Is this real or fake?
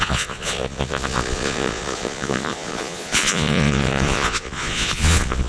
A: fake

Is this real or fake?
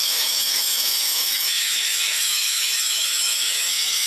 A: fake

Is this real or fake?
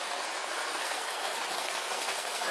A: fake